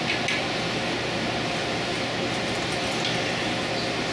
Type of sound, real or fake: real